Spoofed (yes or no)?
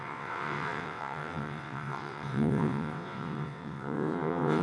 yes